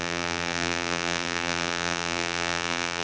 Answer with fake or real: fake